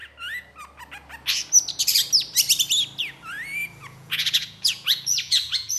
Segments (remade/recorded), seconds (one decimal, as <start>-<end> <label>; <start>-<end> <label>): 0.0-3.8 recorded; 3.8-5.8 remade

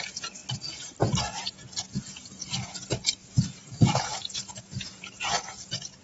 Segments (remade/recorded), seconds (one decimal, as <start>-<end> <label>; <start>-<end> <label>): 0.0-0.4 remade; 0.4-1.2 recorded; 1.2-6.0 remade

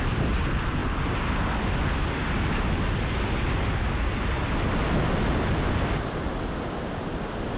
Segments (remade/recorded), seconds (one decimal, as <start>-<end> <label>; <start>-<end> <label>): 0.0-7.6 recorded

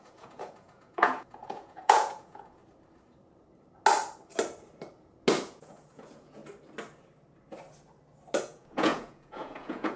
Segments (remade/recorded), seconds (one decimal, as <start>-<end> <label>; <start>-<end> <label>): 0.0-2.6 remade; 2.6-5.4 recorded; 5.4-6.4 remade; 6.4-8.4 recorded; 8.4-10.0 remade

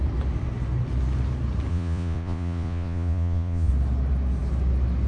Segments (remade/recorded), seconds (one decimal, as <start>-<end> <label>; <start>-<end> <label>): 0.0-1.7 recorded; 1.7-3.7 remade; 3.7-5.1 recorded

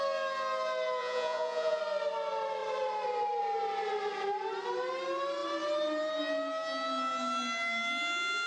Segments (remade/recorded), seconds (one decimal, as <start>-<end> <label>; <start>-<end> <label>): 0.0-1.0 recorded; 1.0-1.8 remade; 1.8-8.5 recorded

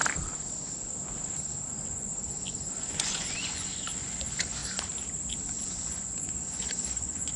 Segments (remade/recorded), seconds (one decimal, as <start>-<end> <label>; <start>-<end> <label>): 0.0-1.7 recorded; 1.7-2.1 remade; 2.1-2.7 recorded; 2.7-4.6 remade; 4.6-5.6 recorded; 5.6-7.4 remade

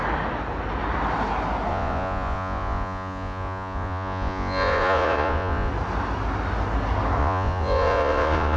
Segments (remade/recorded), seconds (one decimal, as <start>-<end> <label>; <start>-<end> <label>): 0.0-1.7 recorded; 1.7-5.7 remade; 5.7-7.2 recorded; 7.2-8.6 remade